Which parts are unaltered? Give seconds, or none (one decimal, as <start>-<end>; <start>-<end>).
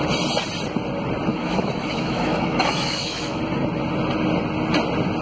0.0-1.3; 3.4-5.2